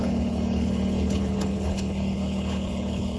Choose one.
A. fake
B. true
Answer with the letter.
A